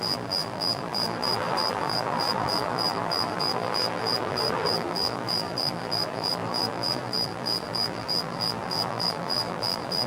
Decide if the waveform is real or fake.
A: fake